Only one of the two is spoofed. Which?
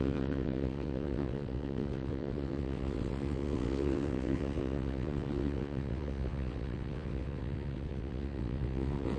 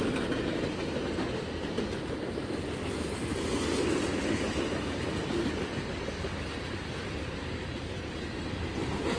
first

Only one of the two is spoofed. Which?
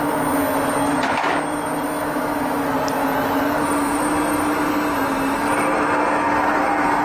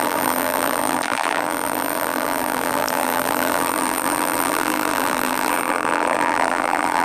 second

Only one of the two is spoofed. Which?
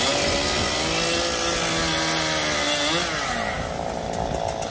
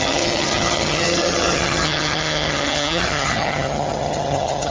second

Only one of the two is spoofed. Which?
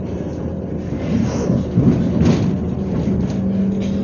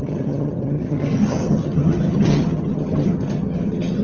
second